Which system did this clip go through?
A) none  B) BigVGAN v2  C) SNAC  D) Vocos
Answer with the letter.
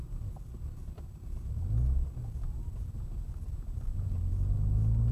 A